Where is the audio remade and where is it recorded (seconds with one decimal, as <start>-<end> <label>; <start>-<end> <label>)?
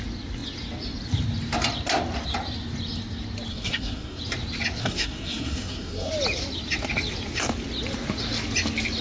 0.0-3.5 recorded; 3.5-4.2 remade; 4.2-4.8 recorded; 4.8-6.1 remade; 6.1-9.0 recorded